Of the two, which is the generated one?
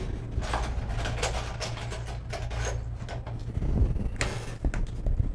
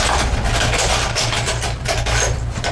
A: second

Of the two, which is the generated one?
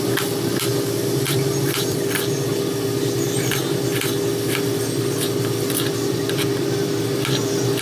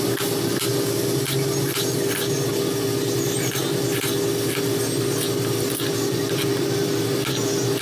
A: first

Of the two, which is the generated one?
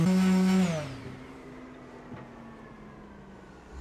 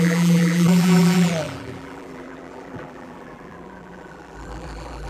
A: second